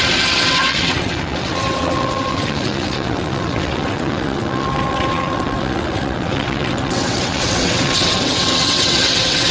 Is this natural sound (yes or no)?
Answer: no